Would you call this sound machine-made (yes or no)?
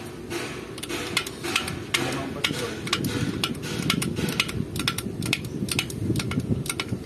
no